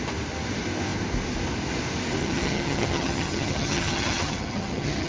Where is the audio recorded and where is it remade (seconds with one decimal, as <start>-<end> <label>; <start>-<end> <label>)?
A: 0.0-2.2 recorded; 2.2-5.1 remade